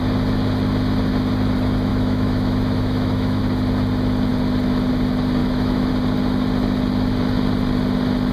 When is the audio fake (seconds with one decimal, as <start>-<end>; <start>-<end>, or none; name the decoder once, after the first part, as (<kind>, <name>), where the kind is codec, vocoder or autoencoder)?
1.9-3.4 (autoencoder, DAC-VAE); 5.4-5.9